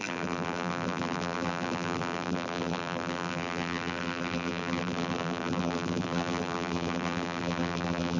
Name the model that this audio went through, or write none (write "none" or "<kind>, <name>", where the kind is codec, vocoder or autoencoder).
vocoder, BigVGAN v2